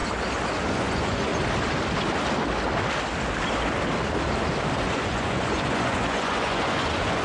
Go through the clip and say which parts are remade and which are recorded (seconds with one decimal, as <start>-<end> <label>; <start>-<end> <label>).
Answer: 0.0-0.7 recorded; 0.7-1.3 remade; 1.3-4.8 recorded; 4.8-7.2 remade